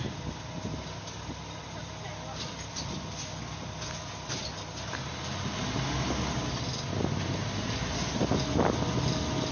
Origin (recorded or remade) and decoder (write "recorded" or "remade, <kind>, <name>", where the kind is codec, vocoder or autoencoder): recorded